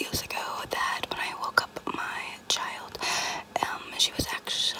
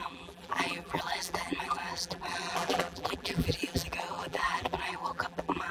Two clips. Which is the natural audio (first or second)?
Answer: first